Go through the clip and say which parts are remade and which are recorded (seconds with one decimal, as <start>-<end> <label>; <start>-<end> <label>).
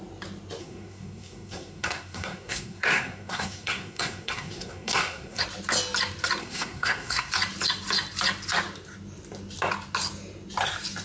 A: 0.0-0.6 recorded; 0.6-5.4 remade; 5.4-6.4 recorded; 6.4-7.3 remade; 7.3-11.0 recorded